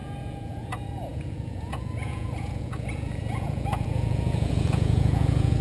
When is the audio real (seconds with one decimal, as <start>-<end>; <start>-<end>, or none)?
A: none